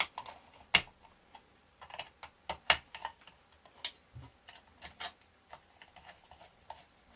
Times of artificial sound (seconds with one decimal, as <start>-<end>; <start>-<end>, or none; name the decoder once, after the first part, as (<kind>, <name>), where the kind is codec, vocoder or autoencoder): none